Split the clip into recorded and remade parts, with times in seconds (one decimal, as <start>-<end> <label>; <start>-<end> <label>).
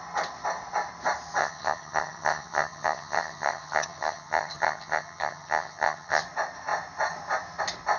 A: 0.0-1.4 recorded; 1.4-6.2 remade; 6.2-8.0 recorded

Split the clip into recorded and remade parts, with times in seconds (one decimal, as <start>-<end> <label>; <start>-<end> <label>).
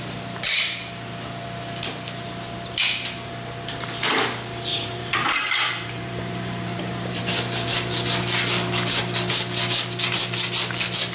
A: 0.0-4.7 recorded; 4.7-7.2 remade; 7.2-11.1 recorded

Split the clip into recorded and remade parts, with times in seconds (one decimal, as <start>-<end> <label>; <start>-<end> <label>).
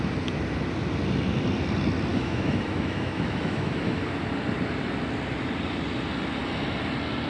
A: 0.0-2.1 recorded; 2.1-4.2 remade; 4.2-7.3 recorded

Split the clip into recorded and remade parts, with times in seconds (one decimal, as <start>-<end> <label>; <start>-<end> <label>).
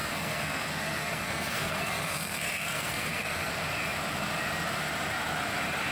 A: 0.0-3.5 remade; 3.5-5.9 recorded